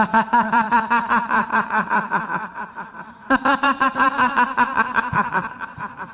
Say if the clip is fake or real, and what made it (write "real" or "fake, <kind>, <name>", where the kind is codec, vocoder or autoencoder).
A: fake, vocoder, BigVGAN v2